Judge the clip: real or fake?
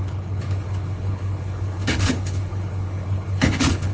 fake